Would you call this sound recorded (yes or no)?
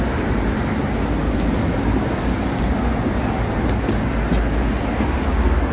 yes